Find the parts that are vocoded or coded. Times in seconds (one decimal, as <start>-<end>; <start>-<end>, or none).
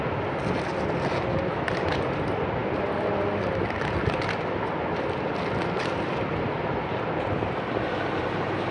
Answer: none